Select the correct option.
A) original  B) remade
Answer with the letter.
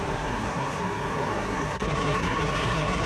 B